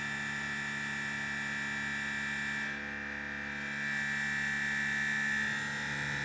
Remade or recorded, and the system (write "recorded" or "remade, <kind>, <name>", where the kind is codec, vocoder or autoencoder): recorded